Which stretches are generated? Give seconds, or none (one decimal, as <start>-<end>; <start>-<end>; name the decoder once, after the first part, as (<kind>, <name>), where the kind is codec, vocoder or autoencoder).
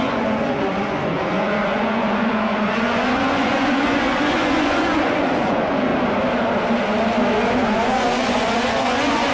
0.0-5.9 (vocoder, Vocos); 7.5-9.3